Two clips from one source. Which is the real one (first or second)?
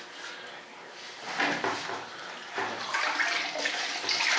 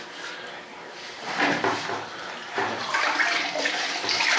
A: first